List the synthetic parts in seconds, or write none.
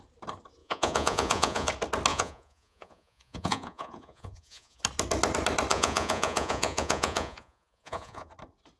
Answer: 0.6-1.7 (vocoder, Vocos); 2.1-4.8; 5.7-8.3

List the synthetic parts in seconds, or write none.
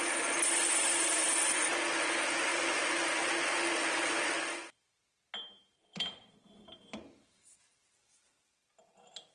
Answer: none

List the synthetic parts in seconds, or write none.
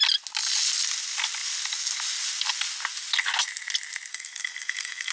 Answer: 4.1-5.1 (codec, SNAC)